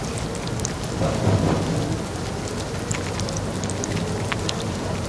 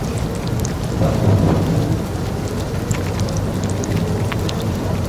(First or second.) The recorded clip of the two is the first